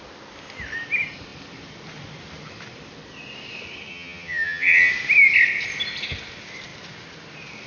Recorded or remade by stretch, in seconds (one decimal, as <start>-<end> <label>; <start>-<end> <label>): 0.0-3.9 recorded; 3.9-4.9 remade; 4.9-7.7 recorded